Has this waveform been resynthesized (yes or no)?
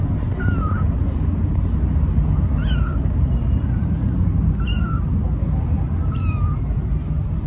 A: no